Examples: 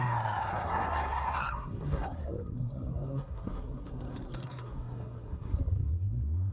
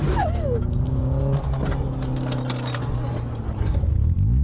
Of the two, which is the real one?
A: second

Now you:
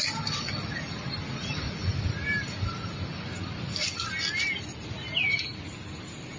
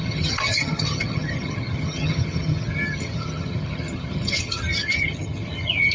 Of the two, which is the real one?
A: first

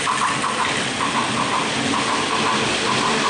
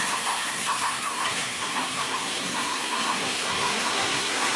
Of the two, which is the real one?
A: first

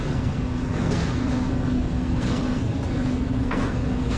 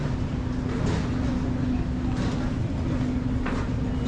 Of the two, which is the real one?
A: second